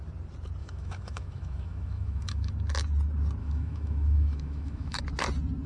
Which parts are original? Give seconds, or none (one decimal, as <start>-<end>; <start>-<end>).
0.0-0.6; 2.5-3.4; 5.0-5.7